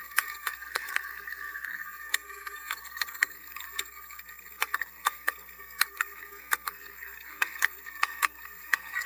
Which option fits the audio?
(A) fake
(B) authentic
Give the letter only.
A